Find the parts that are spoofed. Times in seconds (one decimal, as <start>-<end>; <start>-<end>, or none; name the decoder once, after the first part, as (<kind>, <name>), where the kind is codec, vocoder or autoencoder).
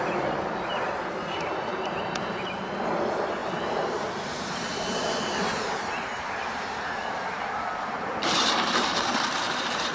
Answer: 0.0-9.9 (vocoder, BigVGAN v2)